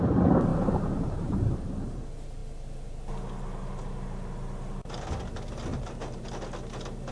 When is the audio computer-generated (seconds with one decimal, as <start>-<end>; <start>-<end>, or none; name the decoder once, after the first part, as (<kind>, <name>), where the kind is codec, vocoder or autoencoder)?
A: 0.5-2.0 (vocoder, BigVGAN v2); 5.7-6.3